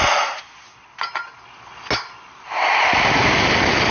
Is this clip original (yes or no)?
yes